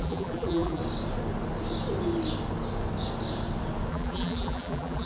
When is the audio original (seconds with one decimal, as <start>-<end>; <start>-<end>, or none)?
0.8-3.9